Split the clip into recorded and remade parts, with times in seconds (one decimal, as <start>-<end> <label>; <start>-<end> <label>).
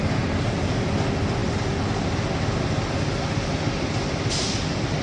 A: 0.0-5.0 recorded